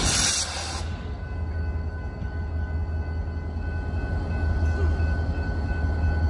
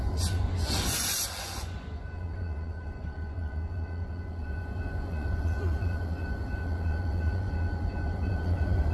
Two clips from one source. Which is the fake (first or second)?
second